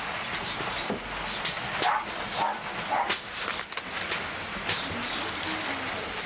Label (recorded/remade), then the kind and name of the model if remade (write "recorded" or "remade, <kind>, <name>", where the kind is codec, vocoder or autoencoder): recorded